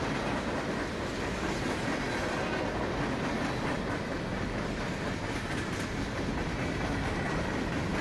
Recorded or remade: recorded